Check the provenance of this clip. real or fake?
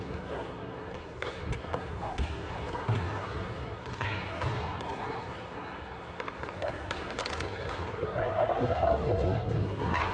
fake